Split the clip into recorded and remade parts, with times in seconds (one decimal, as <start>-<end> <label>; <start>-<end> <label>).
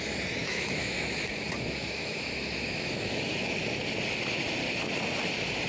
0.0-0.4 recorded; 0.4-3.8 remade; 3.8-5.7 recorded